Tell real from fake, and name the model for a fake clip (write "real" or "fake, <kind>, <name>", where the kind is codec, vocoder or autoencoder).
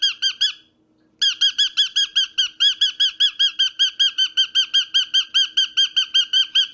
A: real